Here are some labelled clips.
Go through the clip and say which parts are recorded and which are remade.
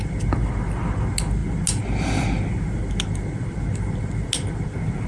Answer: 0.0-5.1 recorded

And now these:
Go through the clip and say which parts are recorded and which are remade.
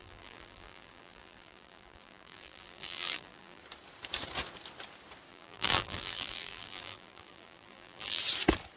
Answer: 0.0-3.6 remade; 3.6-5.3 recorded; 5.3-8.2 remade; 8.2-8.8 recorded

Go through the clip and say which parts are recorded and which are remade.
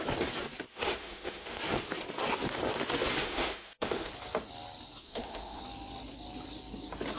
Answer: 0.0-0.7 recorded; 0.7-1.6 remade; 1.6-3.2 recorded; 3.2-4.1 remade; 4.1-5.0 recorded; 5.0-5.6 remade; 5.6-7.2 recorded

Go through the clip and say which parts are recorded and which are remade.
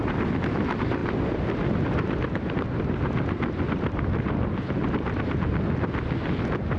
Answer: 0.0-6.8 recorded